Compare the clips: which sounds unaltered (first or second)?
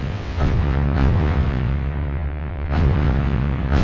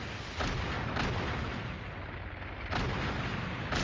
second